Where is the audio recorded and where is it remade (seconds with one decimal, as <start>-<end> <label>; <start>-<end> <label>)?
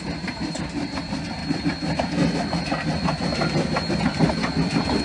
0.0-1.4 remade; 1.4-3.9 recorded; 3.9-4.4 remade; 4.4-5.0 recorded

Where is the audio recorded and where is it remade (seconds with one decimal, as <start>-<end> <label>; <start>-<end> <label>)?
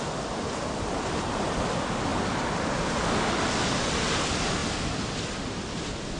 0.0-6.2 recorded